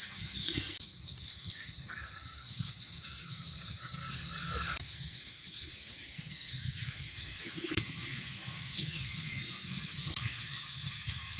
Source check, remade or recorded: remade